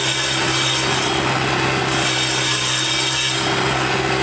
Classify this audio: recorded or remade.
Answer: recorded